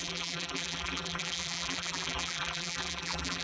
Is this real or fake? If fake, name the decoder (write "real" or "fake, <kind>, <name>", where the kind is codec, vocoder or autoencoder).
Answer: fake, vocoder, BigVGAN v2